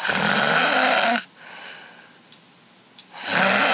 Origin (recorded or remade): recorded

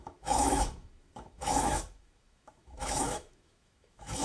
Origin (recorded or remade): remade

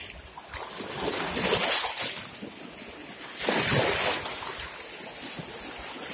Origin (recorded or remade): recorded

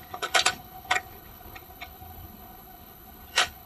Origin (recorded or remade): remade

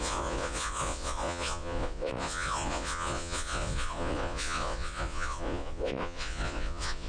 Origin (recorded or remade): remade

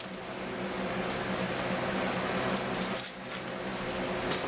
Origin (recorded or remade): recorded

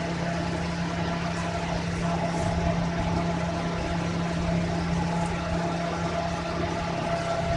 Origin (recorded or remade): recorded